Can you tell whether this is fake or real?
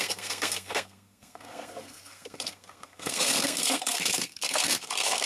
fake